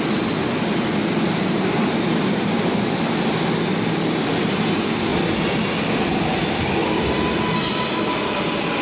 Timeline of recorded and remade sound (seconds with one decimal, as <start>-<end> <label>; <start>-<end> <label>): 0.0-8.8 recorded